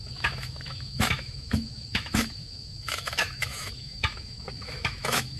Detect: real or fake fake